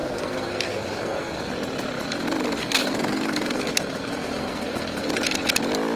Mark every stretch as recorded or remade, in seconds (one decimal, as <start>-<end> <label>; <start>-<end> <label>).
0.0-1.5 remade; 1.5-2.6 recorded; 2.6-5.1 remade; 5.1-6.0 recorded